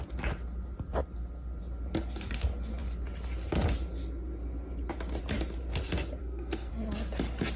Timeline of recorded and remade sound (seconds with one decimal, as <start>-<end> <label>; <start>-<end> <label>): 0.0-6.2 recorded; 6.2-6.7 remade; 6.7-7.6 recorded